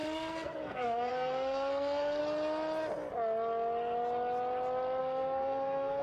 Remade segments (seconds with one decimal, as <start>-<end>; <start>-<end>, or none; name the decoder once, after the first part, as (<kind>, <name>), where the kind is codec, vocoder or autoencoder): 0.0-2.2 (codec, SNAC); 5.0-6.0